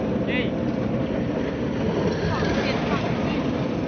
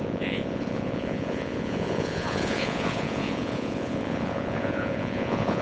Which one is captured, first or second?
first